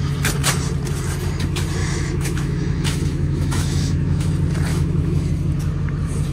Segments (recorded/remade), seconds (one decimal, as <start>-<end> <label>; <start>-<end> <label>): 0.0-1.8 recorded; 1.8-4.3 remade; 4.3-4.7 recorded; 4.7-5.3 remade; 5.3-6.3 recorded